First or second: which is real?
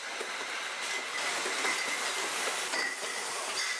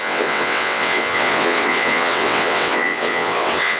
first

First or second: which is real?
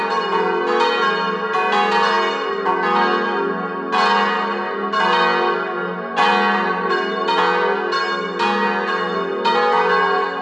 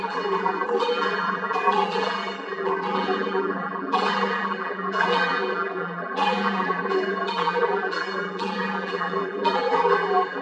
first